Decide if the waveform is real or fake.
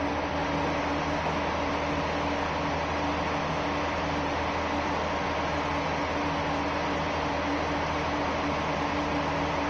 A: real